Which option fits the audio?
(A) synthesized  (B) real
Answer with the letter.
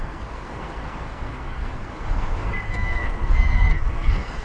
A